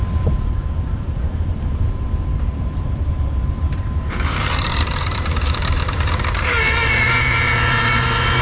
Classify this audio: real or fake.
fake